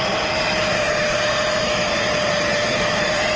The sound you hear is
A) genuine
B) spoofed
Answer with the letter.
B